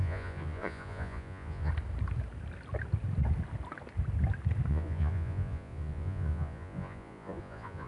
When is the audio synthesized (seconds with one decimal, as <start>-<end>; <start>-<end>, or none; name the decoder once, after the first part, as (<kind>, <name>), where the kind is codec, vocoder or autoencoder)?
0.0-1.7 (vocoder, Vocos); 4.7-7.9